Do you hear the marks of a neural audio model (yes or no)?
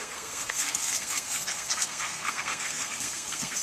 yes